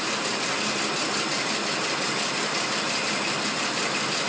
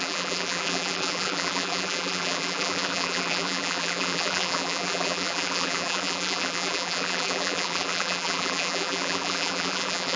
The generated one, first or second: second